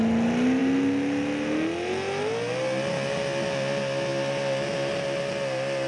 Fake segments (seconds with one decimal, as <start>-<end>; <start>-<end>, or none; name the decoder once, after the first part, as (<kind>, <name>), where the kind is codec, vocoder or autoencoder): none

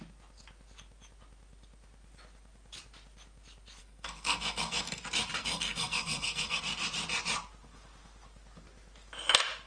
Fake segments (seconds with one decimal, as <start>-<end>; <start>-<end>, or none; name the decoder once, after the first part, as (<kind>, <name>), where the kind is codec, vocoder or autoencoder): 3.8-5.0 (codec, SNAC); 5.4-6.6

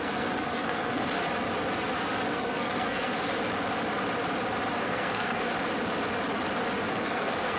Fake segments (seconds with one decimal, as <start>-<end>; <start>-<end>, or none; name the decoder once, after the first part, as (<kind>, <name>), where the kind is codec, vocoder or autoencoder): 0.0-1.2 (codec, SNAC); 2.3-3.1; 4.8-5.5; 6.9-7.6

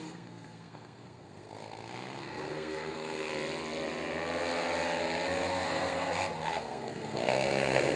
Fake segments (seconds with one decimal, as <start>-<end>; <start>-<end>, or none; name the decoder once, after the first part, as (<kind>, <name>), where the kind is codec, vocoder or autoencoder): 0.0-3.3 (codec, SNAC); 5.0-8.0

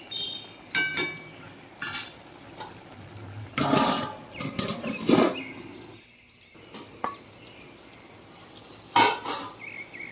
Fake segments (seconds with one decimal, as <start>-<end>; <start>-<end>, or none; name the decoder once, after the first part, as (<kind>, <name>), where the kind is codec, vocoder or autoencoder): none

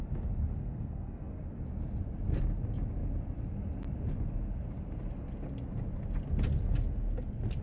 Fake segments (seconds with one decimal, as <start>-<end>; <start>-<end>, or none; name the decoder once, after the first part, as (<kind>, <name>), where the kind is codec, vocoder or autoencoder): 0.6-1.4 (codec, SNAC)

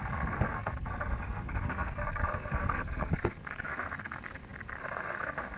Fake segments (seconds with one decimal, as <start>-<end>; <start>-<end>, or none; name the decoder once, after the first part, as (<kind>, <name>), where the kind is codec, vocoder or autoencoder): 0.0-5.6 (codec, SNAC)

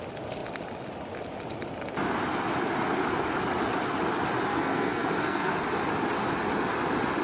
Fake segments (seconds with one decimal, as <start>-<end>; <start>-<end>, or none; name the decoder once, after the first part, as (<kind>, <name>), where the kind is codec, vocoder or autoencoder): 4.5-5.5 (codec, SNAC)